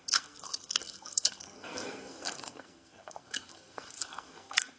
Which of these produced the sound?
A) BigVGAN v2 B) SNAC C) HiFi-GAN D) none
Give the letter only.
B